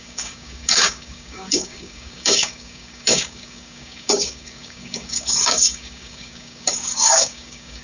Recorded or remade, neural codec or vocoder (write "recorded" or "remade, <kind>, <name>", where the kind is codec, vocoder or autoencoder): remade, codec, DAC